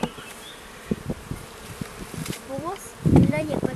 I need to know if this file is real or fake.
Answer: fake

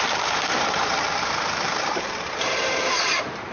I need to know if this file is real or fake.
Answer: fake